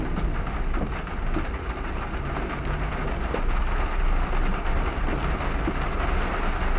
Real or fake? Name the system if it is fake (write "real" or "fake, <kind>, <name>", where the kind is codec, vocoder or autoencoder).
real